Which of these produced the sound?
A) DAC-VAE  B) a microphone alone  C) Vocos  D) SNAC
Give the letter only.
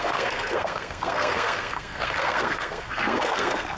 D